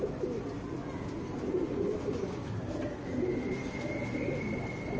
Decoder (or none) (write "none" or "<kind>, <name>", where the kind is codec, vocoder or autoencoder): none